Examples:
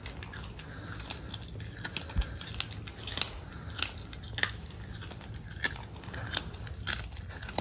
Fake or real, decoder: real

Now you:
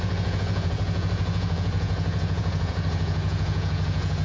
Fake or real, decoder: fake, vocoder, Vocos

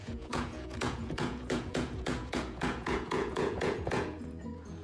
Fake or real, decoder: fake, vocoder, Vocos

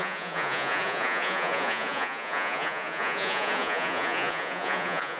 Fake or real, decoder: fake, vocoder, Vocos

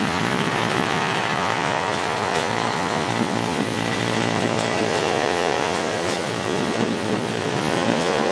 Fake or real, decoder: fake, vocoder, Vocos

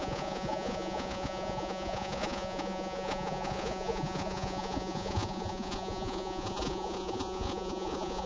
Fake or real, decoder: fake, vocoder, Vocos